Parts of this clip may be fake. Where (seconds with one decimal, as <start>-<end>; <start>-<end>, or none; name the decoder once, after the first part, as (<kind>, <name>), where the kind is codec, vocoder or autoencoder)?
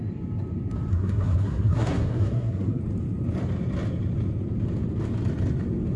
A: 0.9-2.8 (codec, SNAC)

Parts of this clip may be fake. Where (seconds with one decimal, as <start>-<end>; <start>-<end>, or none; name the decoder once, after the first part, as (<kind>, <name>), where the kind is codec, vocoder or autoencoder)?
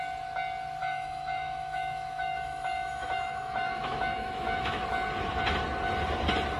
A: 0.8-4.8 (autoencoder, DAC-VAE)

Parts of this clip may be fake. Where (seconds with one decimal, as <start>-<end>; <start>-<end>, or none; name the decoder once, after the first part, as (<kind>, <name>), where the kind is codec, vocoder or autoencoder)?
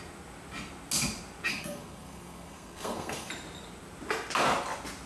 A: 1.5-3.3 (codec, SNAC)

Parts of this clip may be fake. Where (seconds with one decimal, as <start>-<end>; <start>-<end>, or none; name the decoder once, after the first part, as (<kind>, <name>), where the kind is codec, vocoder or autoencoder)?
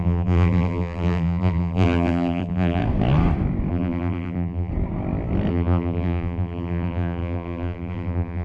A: 0.0-2.8 (vocoder, BigVGAN v2); 3.7-4.7; 5.5-8.4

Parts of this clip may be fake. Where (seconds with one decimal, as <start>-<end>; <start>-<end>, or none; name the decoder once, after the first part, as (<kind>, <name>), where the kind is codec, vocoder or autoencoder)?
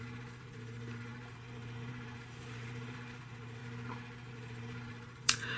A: 0.0-3.6 (vocoder, BigVGAN v2); 4.3-5.6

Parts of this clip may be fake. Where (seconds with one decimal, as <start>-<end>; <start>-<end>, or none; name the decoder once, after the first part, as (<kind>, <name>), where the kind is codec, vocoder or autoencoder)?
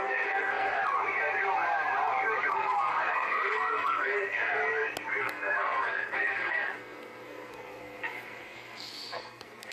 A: 0.0-0.8 (codec, SNAC); 2.5-4.6; 5.2-9.7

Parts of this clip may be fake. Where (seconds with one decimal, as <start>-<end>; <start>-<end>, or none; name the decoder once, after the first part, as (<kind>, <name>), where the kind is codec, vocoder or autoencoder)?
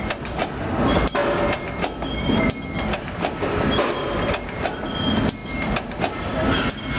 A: none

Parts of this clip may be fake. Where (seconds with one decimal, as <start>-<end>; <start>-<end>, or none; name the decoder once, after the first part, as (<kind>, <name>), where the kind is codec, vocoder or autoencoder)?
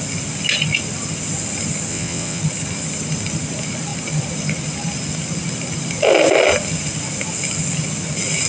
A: 1.9-2.4 (vocoder, WaveNeXt)